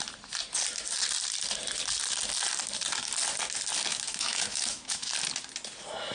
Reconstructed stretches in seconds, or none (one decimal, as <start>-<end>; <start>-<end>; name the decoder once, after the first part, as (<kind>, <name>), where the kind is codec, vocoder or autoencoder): 3.9-5.1 (autoencoder, DAC-VAE)